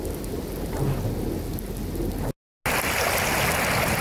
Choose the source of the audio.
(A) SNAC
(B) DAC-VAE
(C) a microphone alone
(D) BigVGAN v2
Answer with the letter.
C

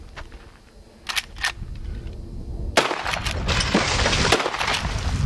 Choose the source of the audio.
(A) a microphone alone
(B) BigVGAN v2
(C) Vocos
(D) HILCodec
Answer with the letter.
A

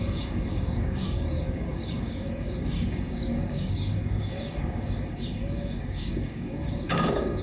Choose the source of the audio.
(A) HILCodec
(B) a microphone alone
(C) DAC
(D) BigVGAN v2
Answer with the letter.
C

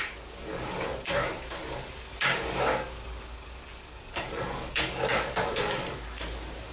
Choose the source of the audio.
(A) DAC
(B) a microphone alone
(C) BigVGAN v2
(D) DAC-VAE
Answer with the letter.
A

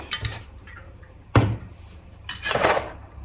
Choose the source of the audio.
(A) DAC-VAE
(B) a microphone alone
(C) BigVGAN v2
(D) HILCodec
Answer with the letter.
C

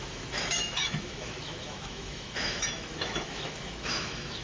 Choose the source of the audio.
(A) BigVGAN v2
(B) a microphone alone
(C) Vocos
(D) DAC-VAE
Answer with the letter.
D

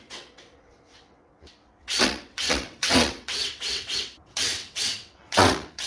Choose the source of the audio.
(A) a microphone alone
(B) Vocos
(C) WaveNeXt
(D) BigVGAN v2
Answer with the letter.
C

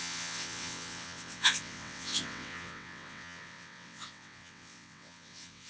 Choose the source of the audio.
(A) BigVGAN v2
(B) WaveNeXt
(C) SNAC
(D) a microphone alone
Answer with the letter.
B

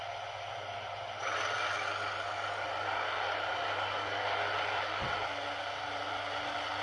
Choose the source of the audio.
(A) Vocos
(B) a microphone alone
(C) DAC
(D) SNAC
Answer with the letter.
B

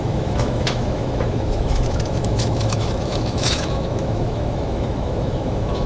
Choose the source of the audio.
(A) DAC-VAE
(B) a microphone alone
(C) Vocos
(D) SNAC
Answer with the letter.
A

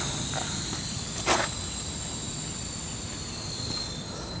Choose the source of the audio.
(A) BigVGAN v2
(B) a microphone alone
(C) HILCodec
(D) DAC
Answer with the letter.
B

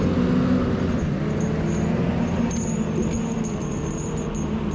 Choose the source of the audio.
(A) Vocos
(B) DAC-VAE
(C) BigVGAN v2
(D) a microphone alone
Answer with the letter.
D